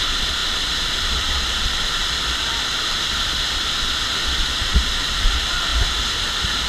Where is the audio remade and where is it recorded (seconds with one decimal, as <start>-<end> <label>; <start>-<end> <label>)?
0.0-0.4 recorded; 0.4-4.2 remade; 4.2-4.7 recorded; 4.7-5.3 remade; 5.3-6.7 recorded